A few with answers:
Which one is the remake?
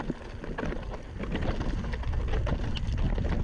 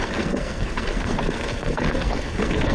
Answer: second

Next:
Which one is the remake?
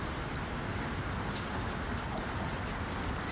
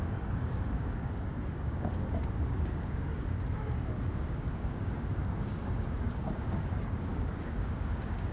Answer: second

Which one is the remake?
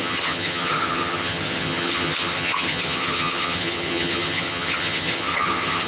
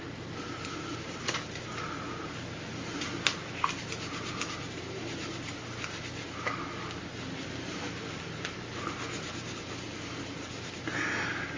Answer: first